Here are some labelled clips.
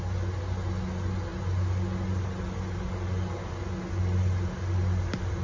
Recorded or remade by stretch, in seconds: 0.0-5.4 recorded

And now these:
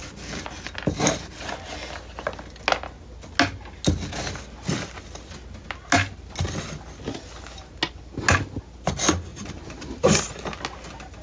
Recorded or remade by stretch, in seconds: 0.0-9.3 recorded; 9.3-10.2 remade; 10.2-11.2 recorded

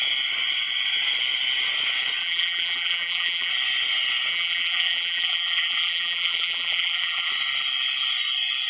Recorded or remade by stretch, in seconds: 0.0-2.2 recorded; 2.2-3.5 remade; 3.5-4.3 recorded; 4.3-7.3 remade; 7.3-8.7 recorded

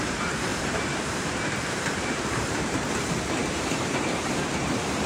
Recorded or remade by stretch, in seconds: 0.0-5.1 remade